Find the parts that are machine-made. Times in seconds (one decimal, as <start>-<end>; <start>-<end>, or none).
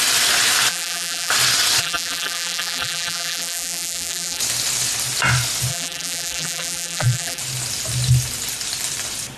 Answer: 0.7-1.3; 1.8-4.4; 5.7-7.4